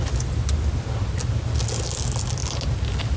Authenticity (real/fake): real